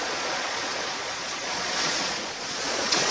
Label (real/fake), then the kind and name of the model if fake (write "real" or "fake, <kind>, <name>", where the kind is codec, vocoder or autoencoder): fake, vocoder, Vocos